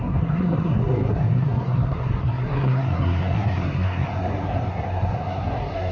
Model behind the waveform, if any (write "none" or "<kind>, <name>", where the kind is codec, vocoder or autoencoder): codec, SNAC